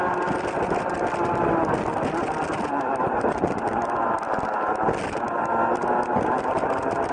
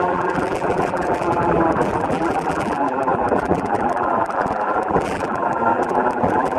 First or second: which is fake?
second